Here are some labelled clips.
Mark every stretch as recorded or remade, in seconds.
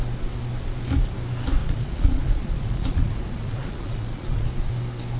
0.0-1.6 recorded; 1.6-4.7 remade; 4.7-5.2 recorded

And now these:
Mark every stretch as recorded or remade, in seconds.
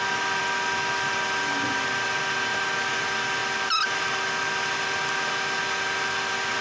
0.0-6.6 recorded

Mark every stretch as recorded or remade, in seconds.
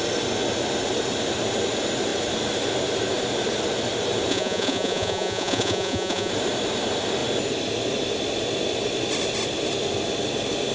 0.0-4.3 recorded; 4.3-6.3 remade; 6.3-10.7 recorded